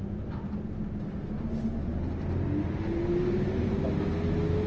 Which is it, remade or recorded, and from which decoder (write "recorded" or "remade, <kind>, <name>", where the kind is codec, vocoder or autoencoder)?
recorded